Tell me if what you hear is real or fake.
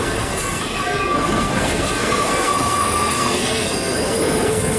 fake